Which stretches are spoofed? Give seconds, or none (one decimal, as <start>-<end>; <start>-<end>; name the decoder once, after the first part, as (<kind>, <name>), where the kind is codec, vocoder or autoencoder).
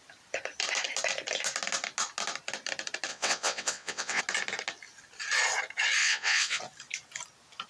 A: 3.1-4.2 (vocoder, WaveNeXt); 6.0-6.6